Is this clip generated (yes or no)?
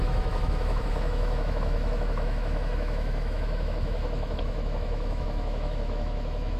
yes